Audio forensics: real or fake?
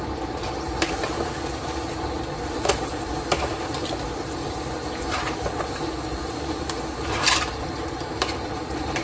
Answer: fake